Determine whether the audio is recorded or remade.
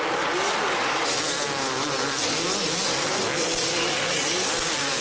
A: recorded